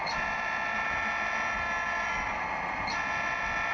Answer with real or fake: real